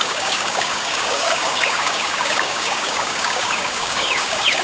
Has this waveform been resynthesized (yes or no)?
yes